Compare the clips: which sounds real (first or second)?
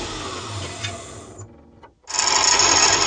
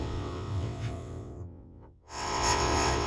first